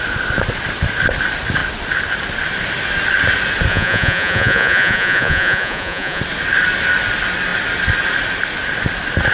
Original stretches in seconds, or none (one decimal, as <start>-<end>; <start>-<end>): 0.0-3.7; 6.2-9.3